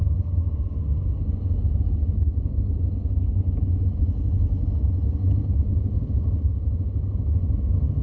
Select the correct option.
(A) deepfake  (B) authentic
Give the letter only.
B